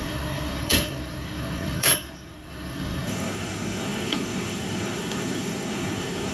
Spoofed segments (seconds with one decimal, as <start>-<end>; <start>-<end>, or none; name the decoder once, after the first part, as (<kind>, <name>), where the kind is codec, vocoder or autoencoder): 0.0-6.3 (codec, SNAC)